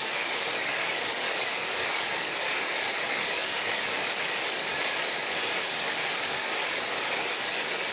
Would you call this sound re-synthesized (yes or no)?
yes